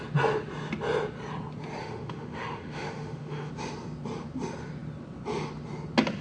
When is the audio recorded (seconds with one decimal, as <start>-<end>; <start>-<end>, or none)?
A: 0.0-1.8; 3.5-6.2